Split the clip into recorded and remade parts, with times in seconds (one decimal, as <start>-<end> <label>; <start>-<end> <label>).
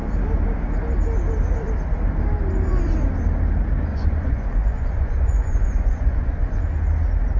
0.0-3.9 recorded; 3.9-6.6 remade; 6.6-7.4 recorded